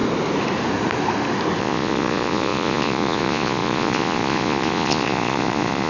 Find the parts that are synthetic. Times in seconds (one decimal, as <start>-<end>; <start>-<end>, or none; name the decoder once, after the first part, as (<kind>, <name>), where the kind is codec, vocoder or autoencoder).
1.6-5.9 (vocoder, Vocos)